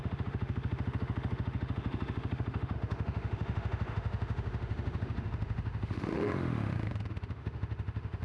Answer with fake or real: fake